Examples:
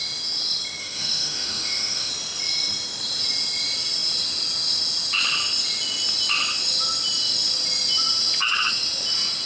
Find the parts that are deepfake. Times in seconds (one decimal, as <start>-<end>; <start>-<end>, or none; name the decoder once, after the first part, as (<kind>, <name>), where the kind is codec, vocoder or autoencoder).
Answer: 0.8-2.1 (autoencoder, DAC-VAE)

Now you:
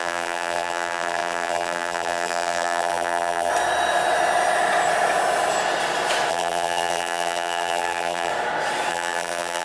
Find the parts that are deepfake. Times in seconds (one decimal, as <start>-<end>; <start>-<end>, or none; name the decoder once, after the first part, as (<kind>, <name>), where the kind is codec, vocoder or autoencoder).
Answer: 0.0-3.5 (vocoder, BigVGAN v2); 6.3-8.3; 8.9-9.6

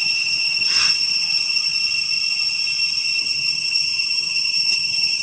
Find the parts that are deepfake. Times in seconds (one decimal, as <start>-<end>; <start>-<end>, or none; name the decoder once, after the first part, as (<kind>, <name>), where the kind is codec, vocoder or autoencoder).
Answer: 0.0-1.7 (vocoder, HiFi-GAN); 3.2-5.2